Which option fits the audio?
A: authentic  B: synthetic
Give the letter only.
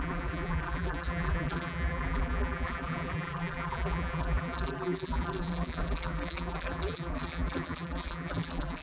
B